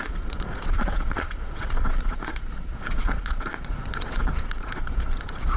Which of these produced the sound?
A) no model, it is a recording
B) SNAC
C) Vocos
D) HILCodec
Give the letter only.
C